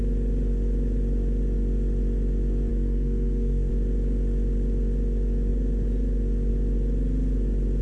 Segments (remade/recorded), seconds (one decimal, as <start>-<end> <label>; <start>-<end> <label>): 0.0-2.7 recorded; 2.7-3.7 remade; 3.7-7.8 recorded